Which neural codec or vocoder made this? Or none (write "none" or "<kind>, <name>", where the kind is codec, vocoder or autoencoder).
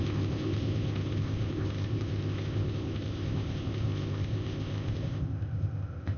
codec, ZipCodec